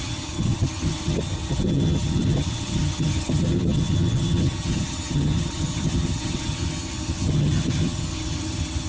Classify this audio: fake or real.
fake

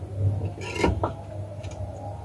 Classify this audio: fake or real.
real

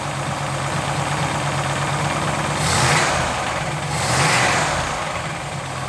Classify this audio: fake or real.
real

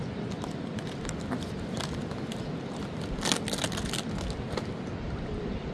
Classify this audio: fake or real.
real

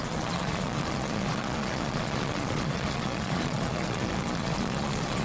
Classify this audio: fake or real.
fake